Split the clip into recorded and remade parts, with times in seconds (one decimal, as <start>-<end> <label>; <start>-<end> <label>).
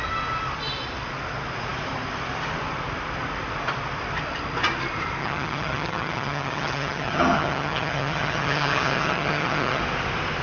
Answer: 0.0-5.2 recorded; 5.2-9.8 remade; 9.8-10.4 recorded